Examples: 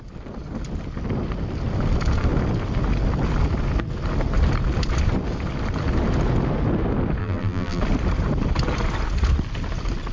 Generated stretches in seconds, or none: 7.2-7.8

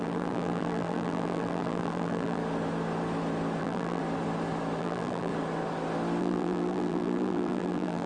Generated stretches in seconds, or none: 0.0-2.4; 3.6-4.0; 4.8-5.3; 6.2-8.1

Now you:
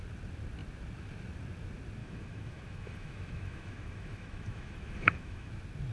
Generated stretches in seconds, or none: 2.0-5.5

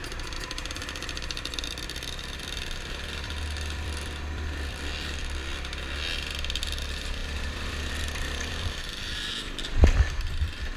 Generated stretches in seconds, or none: 0.0-5.2; 6.6-10.8

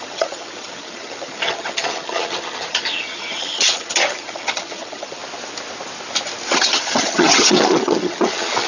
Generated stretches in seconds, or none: 0.0-5.2; 6.5-8.7